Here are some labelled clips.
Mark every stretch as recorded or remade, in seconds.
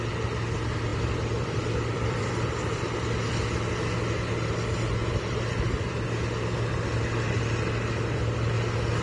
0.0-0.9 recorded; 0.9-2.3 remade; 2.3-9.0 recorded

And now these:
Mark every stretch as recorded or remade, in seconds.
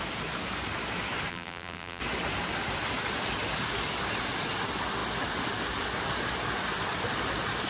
0.0-1.3 recorded; 1.3-2.0 remade; 2.0-7.7 recorded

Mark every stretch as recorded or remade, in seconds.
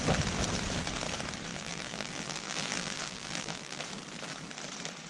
0.0-1.5 recorded; 1.5-3.8 remade; 3.8-5.1 recorded